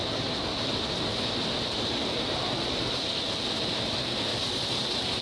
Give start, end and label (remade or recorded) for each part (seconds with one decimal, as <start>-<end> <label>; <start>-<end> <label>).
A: 0.0-4.3 recorded; 4.3-5.2 remade